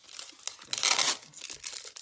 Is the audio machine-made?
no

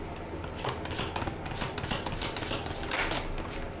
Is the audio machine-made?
no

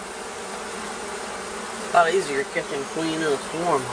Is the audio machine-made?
no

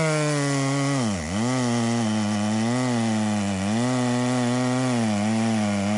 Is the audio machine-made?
no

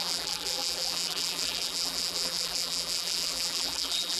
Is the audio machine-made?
yes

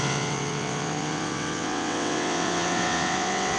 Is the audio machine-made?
yes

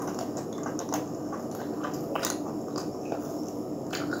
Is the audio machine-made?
no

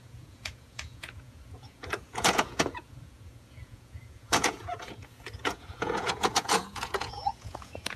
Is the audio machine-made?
yes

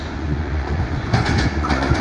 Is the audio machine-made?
yes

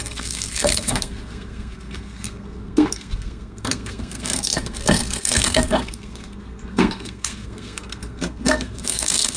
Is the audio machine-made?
yes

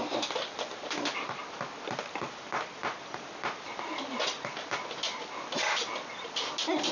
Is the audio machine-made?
no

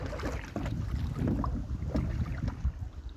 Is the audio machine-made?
no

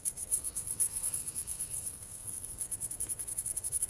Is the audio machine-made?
yes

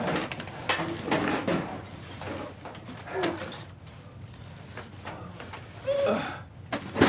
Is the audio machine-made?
no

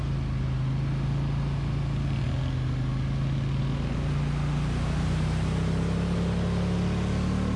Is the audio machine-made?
no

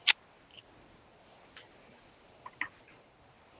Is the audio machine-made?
no